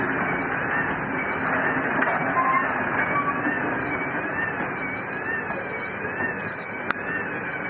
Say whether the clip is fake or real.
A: real